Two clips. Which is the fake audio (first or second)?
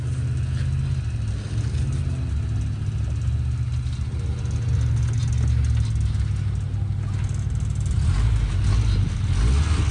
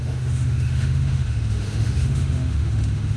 second